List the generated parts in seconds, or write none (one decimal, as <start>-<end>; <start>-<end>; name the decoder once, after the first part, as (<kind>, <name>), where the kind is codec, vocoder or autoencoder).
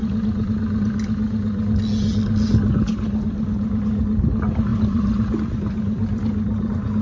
0.0-0.5 (vocoder, BigVGAN v2); 4.7-5.4